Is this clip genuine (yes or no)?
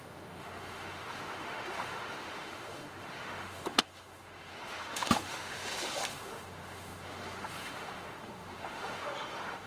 no